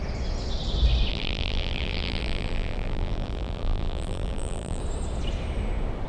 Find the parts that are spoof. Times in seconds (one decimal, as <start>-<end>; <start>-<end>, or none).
1.1-4.8